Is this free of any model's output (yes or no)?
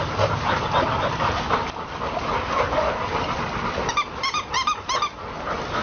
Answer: yes